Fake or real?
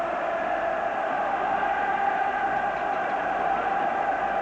real